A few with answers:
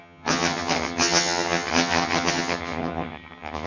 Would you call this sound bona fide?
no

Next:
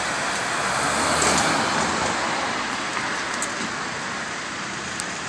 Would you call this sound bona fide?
yes